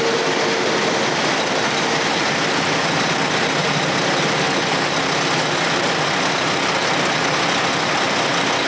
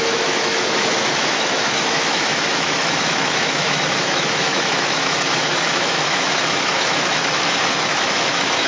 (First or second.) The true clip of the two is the first